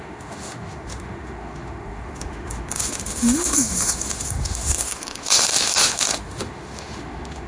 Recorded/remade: remade